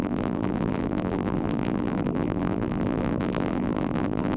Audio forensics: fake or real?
fake